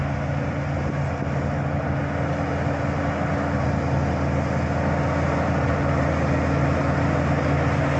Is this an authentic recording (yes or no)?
yes